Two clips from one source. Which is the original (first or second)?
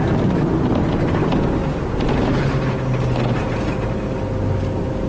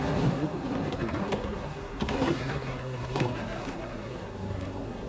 first